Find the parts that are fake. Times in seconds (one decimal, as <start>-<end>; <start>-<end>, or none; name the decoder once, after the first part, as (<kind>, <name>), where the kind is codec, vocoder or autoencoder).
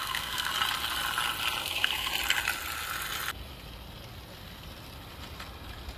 0.0-0.5 (codec, SNAC); 1.6-2.1